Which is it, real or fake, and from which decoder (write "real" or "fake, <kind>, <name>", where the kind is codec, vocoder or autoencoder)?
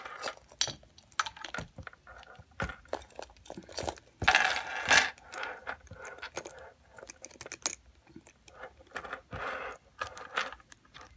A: real